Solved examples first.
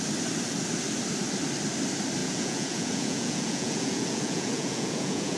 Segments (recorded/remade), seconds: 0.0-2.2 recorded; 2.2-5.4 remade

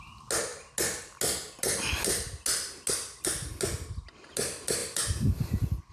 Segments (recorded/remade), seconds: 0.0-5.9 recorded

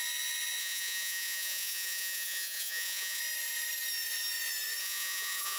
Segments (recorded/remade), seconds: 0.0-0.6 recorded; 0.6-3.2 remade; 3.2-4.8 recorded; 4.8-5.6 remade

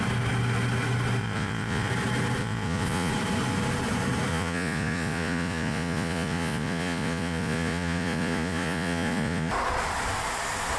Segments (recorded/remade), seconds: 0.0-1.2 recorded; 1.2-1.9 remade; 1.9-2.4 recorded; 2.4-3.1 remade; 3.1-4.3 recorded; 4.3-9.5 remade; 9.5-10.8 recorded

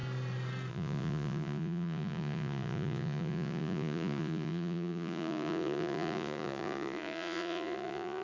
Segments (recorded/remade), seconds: 0.0-0.7 recorded; 0.7-8.2 remade

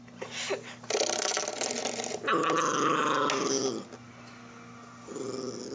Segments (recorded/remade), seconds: 0.0-5.7 recorded

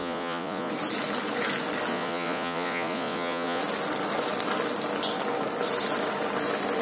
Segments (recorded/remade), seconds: 0.0-0.7 remade; 0.7-1.9 recorded; 1.9-3.6 remade; 3.6-6.8 recorded

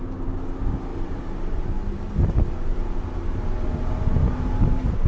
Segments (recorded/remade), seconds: 0.0-5.1 recorded